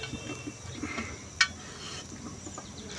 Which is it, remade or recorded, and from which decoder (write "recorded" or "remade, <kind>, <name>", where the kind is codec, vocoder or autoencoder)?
recorded